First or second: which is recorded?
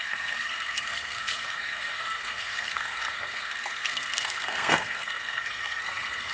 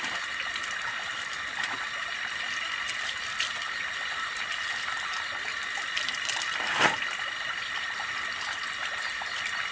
second